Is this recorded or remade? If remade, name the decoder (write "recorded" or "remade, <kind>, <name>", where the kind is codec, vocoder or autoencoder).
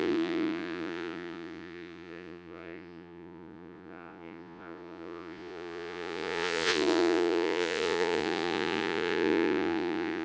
remade, vocoder, Vocos